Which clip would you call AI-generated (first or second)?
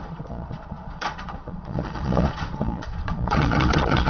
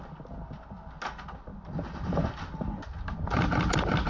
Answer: first